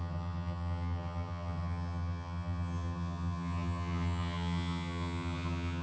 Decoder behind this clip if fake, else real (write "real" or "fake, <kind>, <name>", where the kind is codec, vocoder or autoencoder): fake, vocoder, HiFi-GAN